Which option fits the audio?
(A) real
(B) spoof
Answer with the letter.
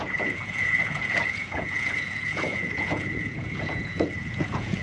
B